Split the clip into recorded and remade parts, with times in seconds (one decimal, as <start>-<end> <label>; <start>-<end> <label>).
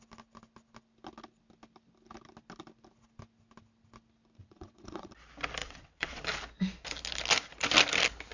0.0-4.4 recorded; 4.4-5.1 remade; 5.1-5.6 recorded; 5.6-6.2 remade; 6.2-8.3 recorded